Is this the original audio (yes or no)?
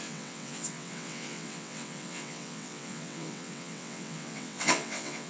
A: no